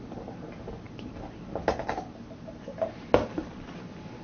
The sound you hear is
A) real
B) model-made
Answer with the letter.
A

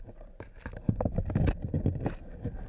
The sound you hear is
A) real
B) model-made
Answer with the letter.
B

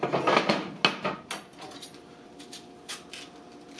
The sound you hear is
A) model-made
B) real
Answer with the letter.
B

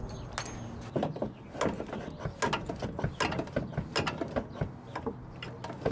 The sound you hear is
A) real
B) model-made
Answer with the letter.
A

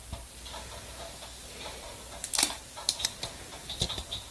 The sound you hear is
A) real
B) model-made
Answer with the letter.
B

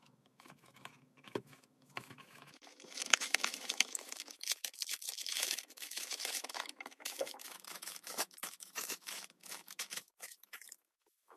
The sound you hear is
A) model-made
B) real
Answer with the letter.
A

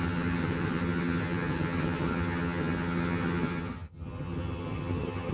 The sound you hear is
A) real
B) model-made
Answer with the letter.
B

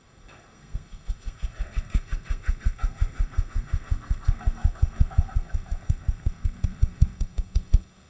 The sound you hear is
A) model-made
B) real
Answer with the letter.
A